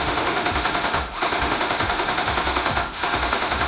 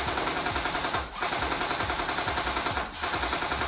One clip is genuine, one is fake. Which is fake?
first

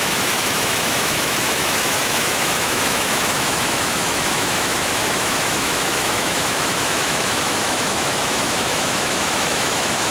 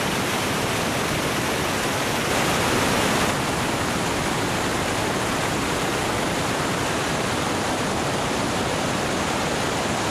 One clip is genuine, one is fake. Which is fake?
first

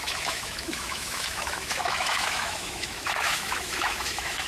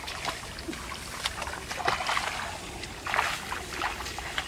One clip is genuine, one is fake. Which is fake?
first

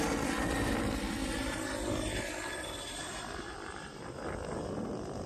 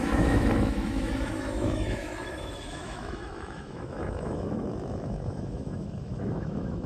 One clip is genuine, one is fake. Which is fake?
second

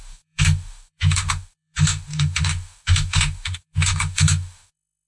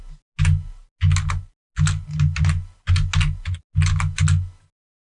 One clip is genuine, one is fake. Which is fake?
first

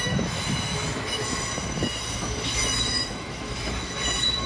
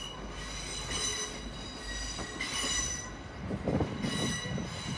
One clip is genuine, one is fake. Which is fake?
first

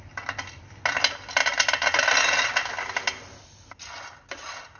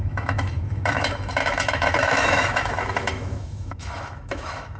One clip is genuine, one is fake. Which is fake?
second